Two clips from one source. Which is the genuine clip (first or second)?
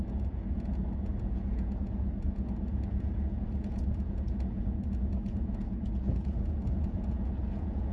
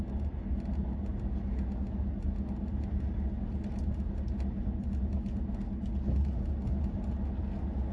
second